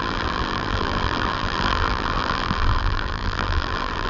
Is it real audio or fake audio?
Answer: fake